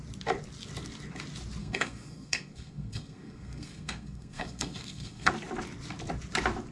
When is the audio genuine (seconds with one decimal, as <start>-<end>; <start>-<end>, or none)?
0.0-1.6; 5.3-6.7